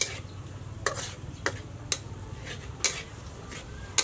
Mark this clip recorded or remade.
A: recorded